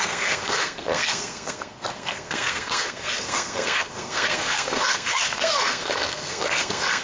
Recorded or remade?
remade